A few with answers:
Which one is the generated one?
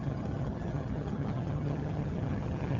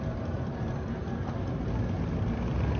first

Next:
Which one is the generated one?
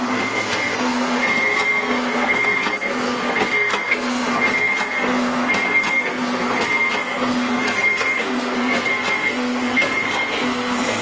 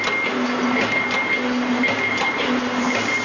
first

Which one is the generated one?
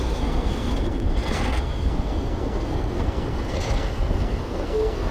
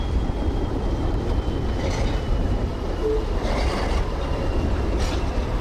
first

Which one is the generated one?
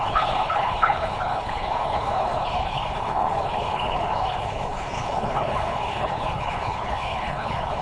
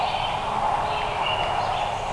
first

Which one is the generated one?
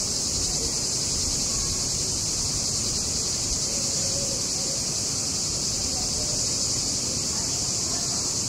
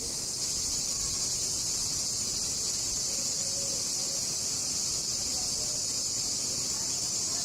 first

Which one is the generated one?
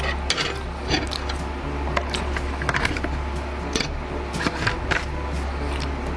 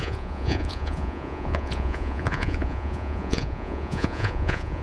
second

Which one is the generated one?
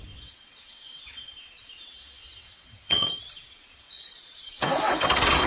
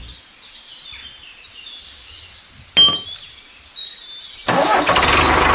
first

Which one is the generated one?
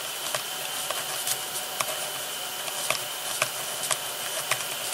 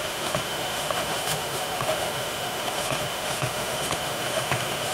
second